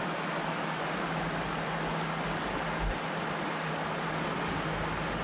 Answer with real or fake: real